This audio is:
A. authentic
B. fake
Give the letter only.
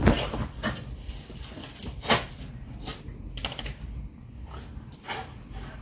A